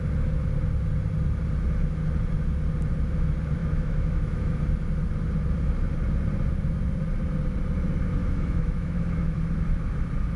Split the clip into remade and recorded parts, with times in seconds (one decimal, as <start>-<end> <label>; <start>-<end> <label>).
0.0-3.6 recorded; 3.6-4.6 remade; 4.6-8.2 recorded; 8.2-9.4 remade; 9.4-10.4 recorded